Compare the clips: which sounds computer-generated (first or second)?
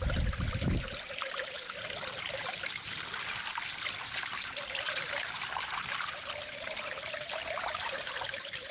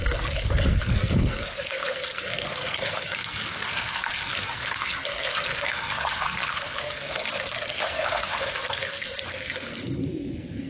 second